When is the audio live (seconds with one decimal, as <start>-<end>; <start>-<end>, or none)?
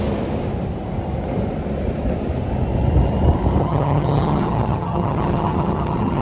0.0-3.6